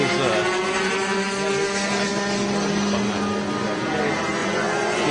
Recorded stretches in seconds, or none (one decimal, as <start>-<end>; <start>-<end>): 0.0-4.4